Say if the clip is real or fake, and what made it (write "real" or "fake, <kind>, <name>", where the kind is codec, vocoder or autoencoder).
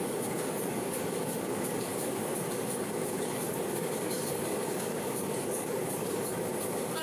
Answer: fake, codec, DAC